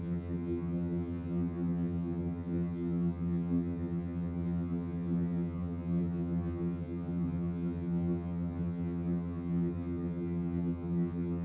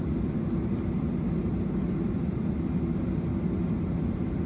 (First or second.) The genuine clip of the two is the second